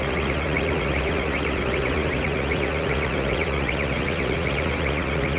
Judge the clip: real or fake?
fake